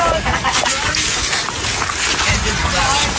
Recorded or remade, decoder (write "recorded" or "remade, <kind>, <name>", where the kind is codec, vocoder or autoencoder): recorded